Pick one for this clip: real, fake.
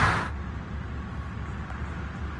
real